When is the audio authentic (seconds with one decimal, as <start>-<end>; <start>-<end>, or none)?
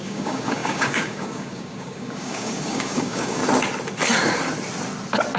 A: 3.4-5.4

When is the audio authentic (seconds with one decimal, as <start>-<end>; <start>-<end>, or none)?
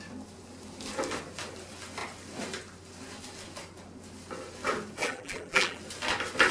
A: 0.0-5.0; 5.8-6.5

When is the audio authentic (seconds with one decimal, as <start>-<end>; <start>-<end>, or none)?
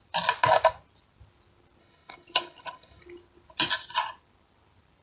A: 0.0-1.8; 3.0-5.0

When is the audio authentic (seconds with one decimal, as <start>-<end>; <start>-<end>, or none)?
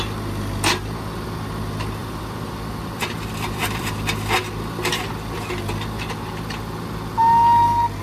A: 0.0-2.0; 4.4-8.0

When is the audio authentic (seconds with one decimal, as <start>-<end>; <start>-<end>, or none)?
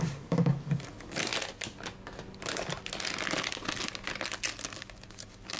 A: 1.3-4.7